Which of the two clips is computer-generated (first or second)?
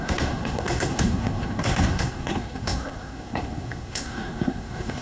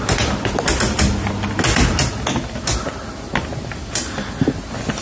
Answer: first